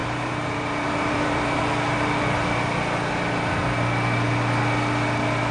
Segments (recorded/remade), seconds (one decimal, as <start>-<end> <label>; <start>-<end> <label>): 0.0-1.6 remade; 1.6-5.5 recorded